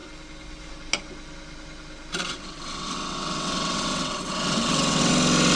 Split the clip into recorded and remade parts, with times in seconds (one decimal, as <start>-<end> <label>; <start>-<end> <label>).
0.0-2.2 recorded; 2.2-5.1 remade; 5.1-5.6 recorded

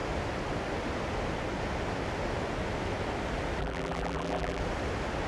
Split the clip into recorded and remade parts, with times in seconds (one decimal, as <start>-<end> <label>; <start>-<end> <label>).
0.0-3.6 recorded; 3.6-4.6 remade; 4.6-5.3 recorded

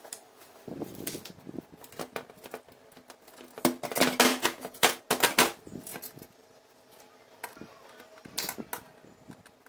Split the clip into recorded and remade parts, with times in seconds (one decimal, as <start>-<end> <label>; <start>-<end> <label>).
0.0-4.3 recorded; 4.3-5.0 remade; 5.0-9.7 recorded

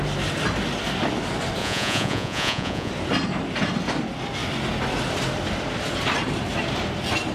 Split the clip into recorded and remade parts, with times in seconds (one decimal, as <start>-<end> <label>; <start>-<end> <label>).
0.0-1.6 recorded; 1.6-2.9 remade; 2.9-7.3 recorded